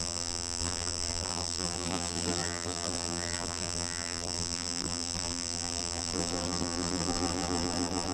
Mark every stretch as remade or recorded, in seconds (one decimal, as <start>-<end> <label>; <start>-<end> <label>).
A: 0.0-8.1 remade

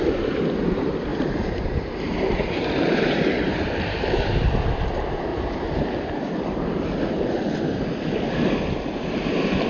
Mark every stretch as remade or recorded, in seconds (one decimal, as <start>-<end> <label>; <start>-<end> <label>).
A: 0.0-1.1 recorded; 1.1-3.2 remade; 3.2-5.3 recorded; 5.3-6.3 remade; 6.3-9.7 recorded

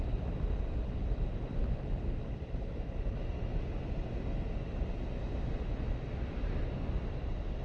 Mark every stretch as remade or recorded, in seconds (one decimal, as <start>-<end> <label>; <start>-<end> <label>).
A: 0.0-7.6 recorded

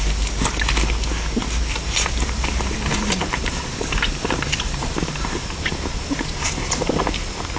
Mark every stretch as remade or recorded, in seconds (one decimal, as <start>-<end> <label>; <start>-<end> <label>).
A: 0.0-1.7 recorded; 1.7-6.3 remade; 6.3-7.6 recorded

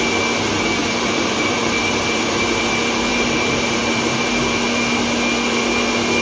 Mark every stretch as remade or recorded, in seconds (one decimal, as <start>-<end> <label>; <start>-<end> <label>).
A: 0.0-0.8 recorded; 0.8-2.7 remade; 2.7-3.1 recorded; 3.1-4.4 remade; 4.4-6.2 recorded